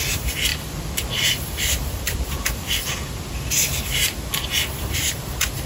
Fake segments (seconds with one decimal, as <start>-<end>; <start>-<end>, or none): 0.5-3.5